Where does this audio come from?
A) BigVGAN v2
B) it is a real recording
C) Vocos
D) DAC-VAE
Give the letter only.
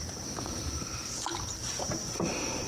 A